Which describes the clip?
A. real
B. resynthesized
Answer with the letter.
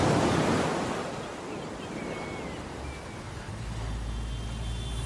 A